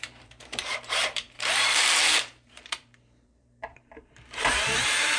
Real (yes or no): no